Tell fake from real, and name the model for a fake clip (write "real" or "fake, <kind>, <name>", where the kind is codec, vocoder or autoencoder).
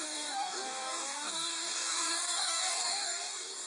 fake, codec, DAC